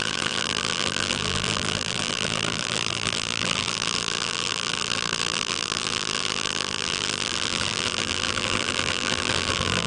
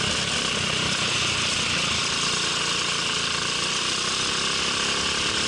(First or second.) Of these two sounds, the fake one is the first